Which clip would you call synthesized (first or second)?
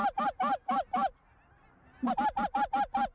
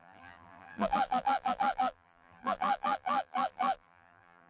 second